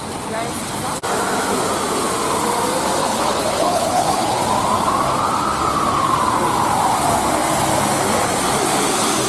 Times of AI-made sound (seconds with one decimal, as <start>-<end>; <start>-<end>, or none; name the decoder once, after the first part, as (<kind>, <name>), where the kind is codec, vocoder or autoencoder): 3.0-4.4 (codec, HILCodec)